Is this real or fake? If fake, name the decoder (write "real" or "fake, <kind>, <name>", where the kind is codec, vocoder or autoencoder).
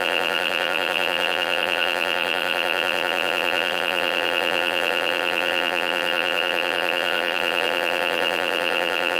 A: fake, vocoder, BigVGAN v2